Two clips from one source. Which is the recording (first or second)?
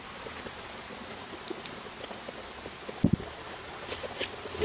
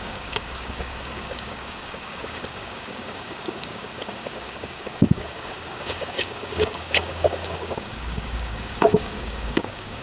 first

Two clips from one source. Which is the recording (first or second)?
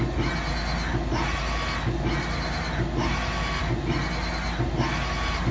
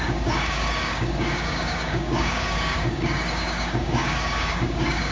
first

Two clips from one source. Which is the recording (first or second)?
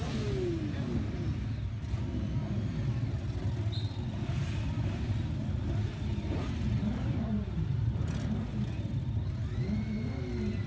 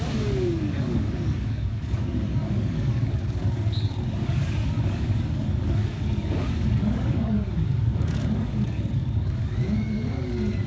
first